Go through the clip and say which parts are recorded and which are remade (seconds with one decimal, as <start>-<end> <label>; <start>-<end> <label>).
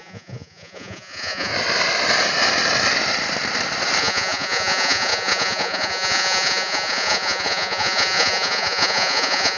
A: 0.0-1.5 remade; 1.5-4.0 recorded; 4.0-9.6 remade